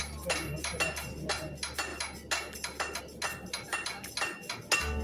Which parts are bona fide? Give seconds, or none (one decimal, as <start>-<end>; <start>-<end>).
0.0-5.0